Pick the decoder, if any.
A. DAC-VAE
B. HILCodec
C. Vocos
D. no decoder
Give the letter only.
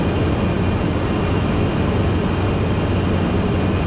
D